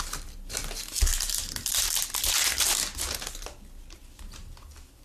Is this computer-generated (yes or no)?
no